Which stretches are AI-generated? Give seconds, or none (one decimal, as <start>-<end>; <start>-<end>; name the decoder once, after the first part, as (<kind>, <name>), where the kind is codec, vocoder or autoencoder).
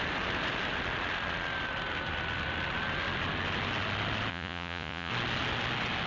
4.3-5.1 (vocoder, Vocos)